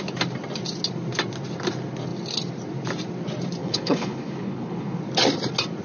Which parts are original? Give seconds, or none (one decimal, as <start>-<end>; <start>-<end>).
0.0-3.6; 5.0-5.8